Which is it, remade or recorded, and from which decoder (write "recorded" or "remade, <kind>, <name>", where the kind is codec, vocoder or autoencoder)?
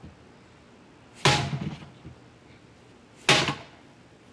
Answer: recorded